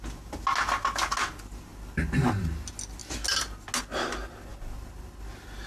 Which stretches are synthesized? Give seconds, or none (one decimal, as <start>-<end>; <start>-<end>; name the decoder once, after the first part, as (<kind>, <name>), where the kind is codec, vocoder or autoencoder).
none